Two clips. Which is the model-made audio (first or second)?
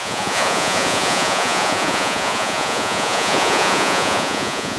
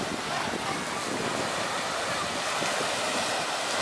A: first